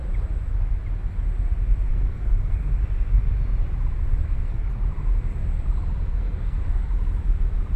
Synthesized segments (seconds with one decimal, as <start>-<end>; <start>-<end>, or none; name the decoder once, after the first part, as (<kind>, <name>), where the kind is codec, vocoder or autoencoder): 1.9-2.7 (codec, SNAC); 4.2-4.7; 6.1-6.9